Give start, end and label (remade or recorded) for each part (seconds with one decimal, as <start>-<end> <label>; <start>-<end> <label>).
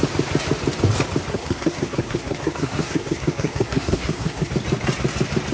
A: 0.0-1.3 recorded; 1.3-4.5 remade; 4.5-5.5 recorded